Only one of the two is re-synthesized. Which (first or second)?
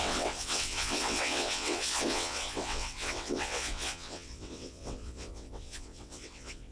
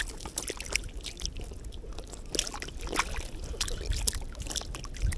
first